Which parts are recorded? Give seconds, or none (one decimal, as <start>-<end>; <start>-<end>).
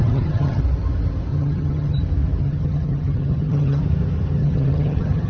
0.6-1.3; 2.0-2.4; 3.8-4.4